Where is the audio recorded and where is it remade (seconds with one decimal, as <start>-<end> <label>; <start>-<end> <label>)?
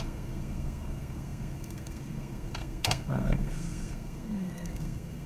0.0-5.3 remade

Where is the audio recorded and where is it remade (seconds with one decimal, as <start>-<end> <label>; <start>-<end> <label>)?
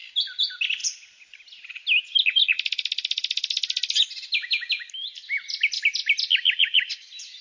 0.0-7.4 recorded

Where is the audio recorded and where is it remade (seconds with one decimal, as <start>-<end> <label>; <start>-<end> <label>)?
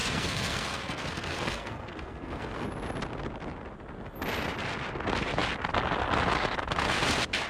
0.0-2.7 remade; 2.7-7.5 recorded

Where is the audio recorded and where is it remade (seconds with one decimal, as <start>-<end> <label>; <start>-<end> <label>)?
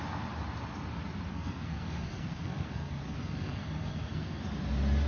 0.0-1.3 recorded; 1.3-4.4 remade; 4.4-5.1 recorded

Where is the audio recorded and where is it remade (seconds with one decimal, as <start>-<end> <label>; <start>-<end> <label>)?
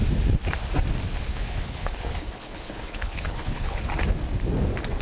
0.0-1.3 recorded; 1.3-3.9 remade; 3.9-5.0 recorded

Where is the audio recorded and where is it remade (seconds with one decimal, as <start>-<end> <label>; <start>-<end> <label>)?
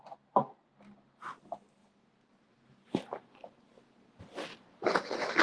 0.0-1.8 recorded; 1.8-3.6 remade; 3.6-4.5 recorded; 4.5-5.4 remade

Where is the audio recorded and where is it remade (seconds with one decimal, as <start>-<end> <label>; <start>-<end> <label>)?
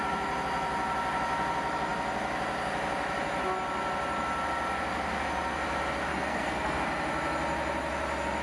0.0-6.1 recorded; 6.1-6.8 remade; 6.8-8.4 recorded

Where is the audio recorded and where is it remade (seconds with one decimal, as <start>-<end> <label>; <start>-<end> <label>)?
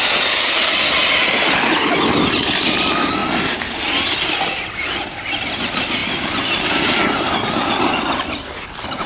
0.0-1.0 recorded; 1.0-1.7 remade; 1.7-6.0 recorded; 6.0-9.1 remade